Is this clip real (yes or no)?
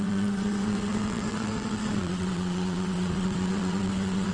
no